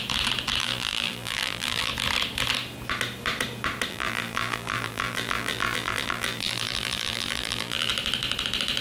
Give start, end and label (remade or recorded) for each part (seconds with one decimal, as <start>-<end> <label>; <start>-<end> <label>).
0.0-0.6 recorded; 0.6-1.9 remade; 1.9-3.9 recorded; 3.9-7.9 remade; 7.9-8.8 recorded